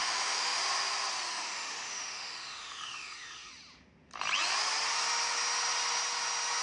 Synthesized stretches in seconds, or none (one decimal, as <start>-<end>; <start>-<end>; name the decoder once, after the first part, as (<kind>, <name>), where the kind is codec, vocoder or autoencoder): 0.0-0.6 (autoencoder, DAC-VAE); 1.3-3.5